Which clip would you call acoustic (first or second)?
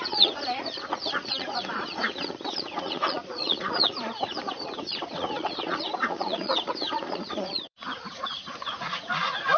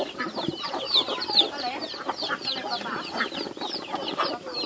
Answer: second